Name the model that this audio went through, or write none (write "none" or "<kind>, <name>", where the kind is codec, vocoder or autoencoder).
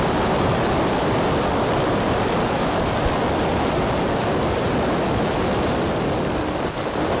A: none